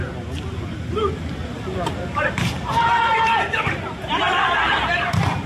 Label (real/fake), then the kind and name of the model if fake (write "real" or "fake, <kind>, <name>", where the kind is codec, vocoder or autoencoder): real